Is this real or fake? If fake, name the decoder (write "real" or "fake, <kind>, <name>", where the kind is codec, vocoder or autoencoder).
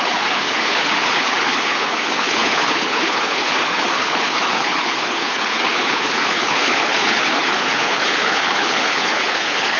fake, codec, HILCodec